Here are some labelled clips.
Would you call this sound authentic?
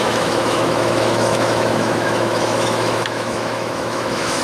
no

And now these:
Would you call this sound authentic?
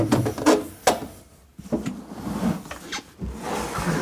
yes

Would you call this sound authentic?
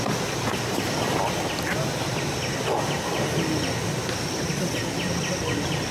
yes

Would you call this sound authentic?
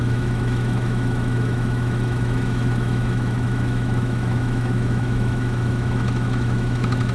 no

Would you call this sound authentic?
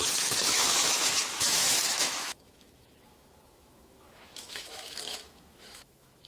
no